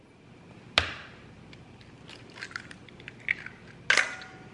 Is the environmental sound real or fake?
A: real